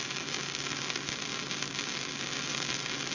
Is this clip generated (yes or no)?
no